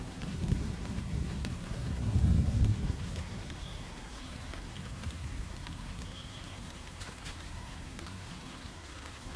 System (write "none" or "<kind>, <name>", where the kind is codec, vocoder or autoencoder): codec, SNAC